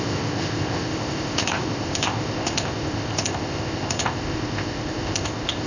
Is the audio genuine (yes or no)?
no